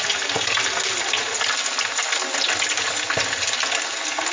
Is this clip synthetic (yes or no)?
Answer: no